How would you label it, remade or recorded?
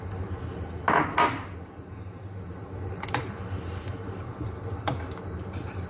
recorded